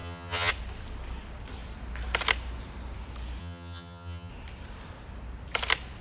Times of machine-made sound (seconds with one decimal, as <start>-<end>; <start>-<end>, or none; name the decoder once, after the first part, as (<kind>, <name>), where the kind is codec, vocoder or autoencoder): 0.0-0.5 (vocoder, HiFi-GAN); 3.4-4.3